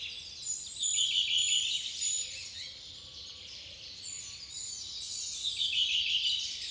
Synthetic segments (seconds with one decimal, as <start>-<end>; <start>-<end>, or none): none